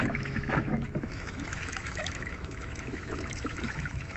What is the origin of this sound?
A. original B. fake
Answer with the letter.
B